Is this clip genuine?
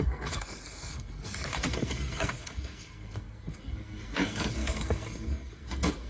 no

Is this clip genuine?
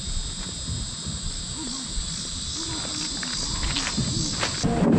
yes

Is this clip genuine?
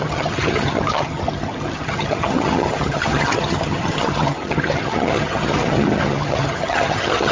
no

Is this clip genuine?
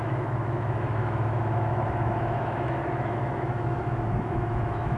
no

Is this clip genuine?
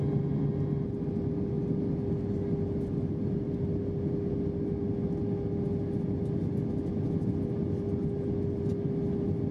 yes